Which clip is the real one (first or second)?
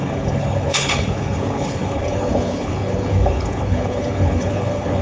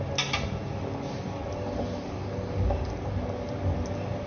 second